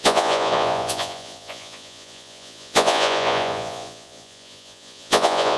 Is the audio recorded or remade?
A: remade